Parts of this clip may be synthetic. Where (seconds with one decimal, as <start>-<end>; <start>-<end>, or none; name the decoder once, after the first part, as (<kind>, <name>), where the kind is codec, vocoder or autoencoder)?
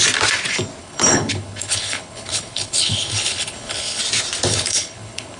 0.8-4.0 (codec, HILCodec); 4.5-5.4